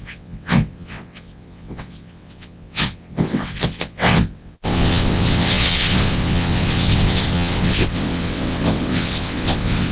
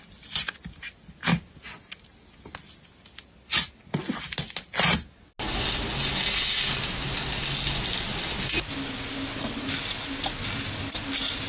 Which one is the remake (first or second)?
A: first